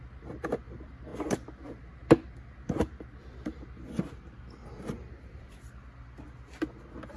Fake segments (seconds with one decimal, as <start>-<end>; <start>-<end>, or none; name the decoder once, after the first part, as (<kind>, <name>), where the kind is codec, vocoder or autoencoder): none